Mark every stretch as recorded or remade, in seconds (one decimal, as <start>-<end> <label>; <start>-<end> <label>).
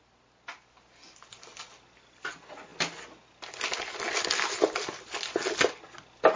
0.0-6.4 recorded